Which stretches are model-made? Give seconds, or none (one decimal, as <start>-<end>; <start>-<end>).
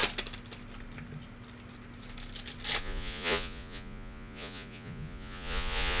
2.8-6.0